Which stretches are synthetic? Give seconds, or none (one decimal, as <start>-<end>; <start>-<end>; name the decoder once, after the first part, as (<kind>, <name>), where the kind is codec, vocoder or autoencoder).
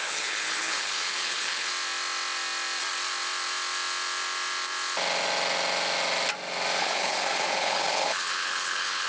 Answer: 0.0-1.7 (codec, HILCodec); 6.8-9.1